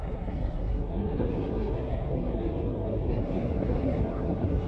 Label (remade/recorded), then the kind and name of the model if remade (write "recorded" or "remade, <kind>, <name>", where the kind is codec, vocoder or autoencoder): remade, codec, SNAC